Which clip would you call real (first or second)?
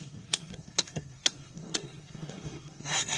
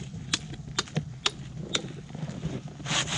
second